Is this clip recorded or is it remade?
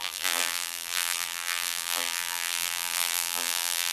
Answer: remade